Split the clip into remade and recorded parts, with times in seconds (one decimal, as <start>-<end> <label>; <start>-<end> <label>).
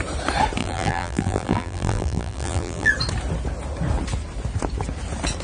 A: 0.0-0.6 recorded; 0.6-2.9 remade; 2.9-5.4 recorded